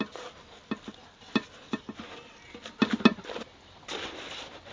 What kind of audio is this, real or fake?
real